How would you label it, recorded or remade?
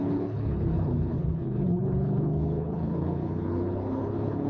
remade